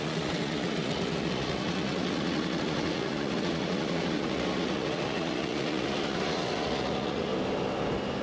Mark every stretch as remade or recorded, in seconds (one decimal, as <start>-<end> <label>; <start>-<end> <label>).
0.0-7.3 remade; 7.3-8.2 recorded